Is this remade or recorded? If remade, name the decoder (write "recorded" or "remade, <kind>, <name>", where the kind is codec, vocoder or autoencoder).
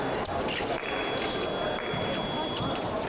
recorded